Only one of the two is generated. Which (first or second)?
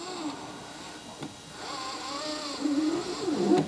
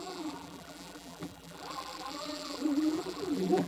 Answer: second